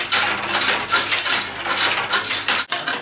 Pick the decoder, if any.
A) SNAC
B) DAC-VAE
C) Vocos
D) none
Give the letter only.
D